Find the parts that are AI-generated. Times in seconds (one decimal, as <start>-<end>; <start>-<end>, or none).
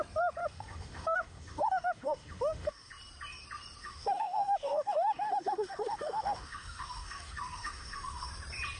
0.4-2.9; 3.8-8.3